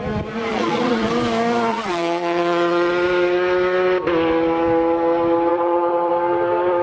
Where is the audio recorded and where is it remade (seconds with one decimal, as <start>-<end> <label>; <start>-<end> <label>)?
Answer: 0.0-0.5 recorded; 0.5-1.1 remade; 1.1-1.7 recorded; 1.7-2.9 remade; 2.9-5.5 recorded; 5.5-6.1 remade; 6.1-6.8 recorded